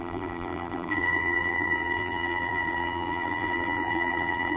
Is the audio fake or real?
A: fake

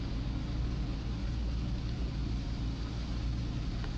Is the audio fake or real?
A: real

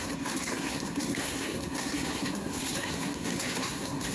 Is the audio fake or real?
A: fake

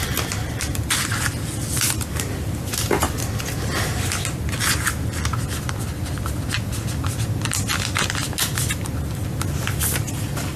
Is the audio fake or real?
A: real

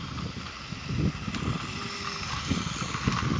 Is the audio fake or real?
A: real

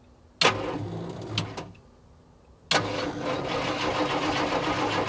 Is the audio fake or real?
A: real